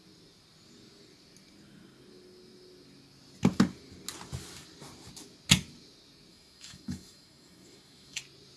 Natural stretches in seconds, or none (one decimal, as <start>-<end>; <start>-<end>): 0.0-6.3; 8.2-8.6